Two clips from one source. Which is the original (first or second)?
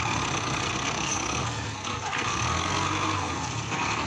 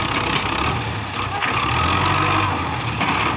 second